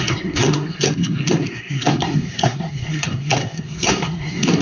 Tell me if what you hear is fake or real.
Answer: fake